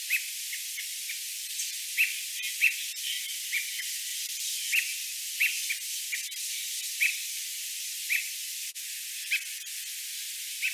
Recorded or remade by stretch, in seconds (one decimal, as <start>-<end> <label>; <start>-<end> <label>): 0.0-4.1 recorded; 4.1-4.6 remade; 4.6-10.7 recorded